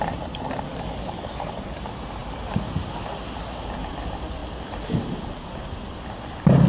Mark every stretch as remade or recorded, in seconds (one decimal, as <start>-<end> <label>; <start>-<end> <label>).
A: 0.0-0.7 recorded; 0.7-1.8 remade; 1.8-6.7 recorded